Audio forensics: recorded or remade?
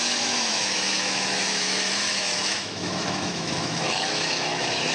remade